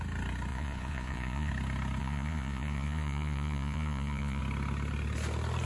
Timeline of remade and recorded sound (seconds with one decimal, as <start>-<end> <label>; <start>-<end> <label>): 0.0-0.5 recorded; 0.5-1.5 remade; 1.5-2.0 recorded; 2.0-4.4 remade; 4.4-5.7 recorded